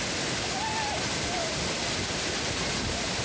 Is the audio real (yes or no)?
yes